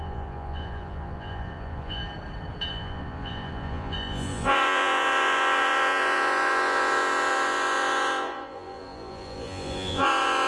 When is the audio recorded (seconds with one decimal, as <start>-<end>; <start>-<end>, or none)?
2.0-2.7

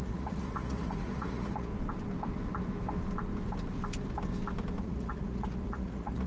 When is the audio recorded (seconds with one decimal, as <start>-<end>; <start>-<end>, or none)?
1.7-4.8